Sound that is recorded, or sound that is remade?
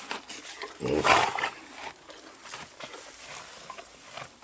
recorded